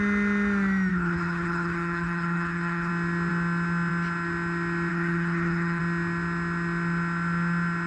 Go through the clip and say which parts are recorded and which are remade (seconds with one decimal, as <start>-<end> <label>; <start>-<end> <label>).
0.0-0.9 recorded; 0.9-2.9 remade; 2.9-4.9 recorded; 4.9-5.8 remade; 5.8-7.9 recorded